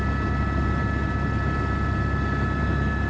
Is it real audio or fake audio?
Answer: real